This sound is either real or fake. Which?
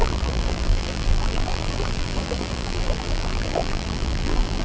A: fake